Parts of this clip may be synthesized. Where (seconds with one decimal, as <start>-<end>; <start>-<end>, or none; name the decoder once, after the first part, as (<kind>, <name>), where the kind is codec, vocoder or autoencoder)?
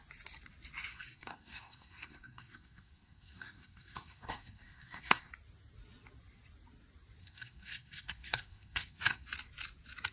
0.9-5.3 (codec, SNAC); 7.2-9.3